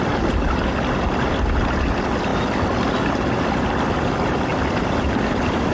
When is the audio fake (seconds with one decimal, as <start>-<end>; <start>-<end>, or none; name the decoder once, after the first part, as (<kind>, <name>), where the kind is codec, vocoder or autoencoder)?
none